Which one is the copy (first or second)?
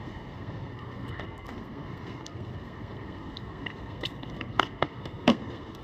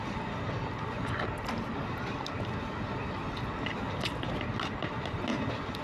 first